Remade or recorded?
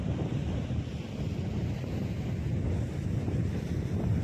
recorded